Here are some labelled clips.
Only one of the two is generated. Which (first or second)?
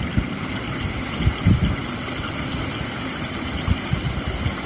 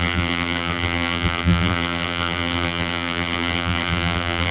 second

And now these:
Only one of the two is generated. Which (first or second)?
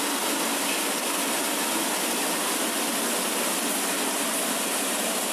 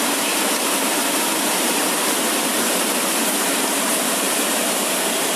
second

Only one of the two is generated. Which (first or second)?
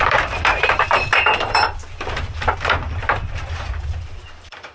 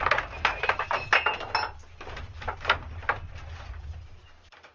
first